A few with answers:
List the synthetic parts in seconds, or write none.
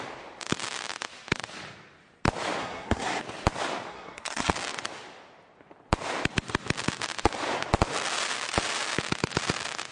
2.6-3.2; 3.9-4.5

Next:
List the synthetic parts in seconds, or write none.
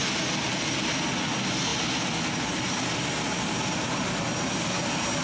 none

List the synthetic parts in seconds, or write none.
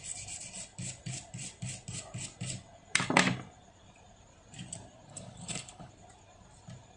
5.1-5.9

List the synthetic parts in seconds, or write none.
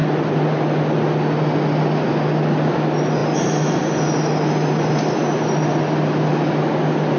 none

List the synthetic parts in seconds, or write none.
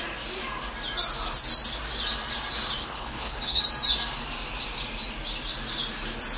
2.8-3.6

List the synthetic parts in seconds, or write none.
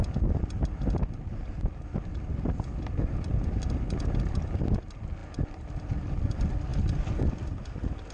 2.1-3.0; 5.2-6.1; 6.7-7.3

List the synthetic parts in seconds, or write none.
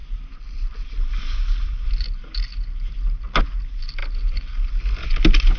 none